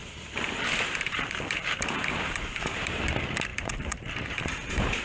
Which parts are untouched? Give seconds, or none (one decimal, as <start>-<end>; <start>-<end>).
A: 3.0-3.5